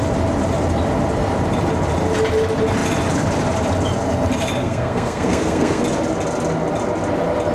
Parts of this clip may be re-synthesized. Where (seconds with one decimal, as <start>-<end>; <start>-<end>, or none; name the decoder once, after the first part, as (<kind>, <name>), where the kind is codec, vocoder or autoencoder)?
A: 4.6-5.8 (codec, SNAC)